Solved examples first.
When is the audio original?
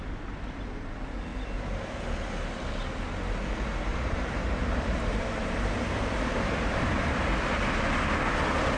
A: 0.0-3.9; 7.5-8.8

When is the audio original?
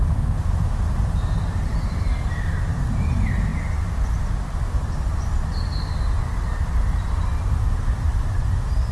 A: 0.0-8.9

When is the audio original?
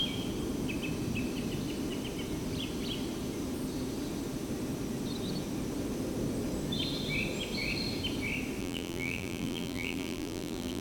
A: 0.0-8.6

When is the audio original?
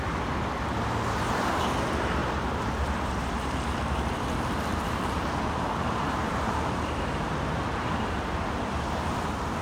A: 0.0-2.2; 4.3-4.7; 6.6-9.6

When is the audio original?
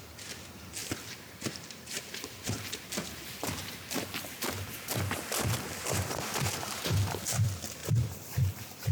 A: 0.0-0.8; 4.7-7.8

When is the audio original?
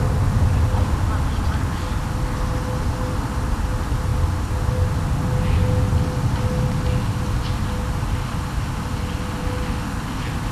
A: 0.0-10.5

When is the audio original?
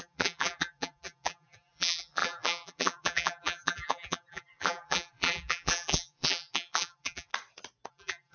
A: 7.3-7.9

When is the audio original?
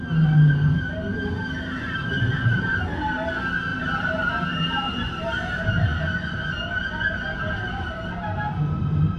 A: 0.0-1.1; 2.8-3.7; 5.4-9.2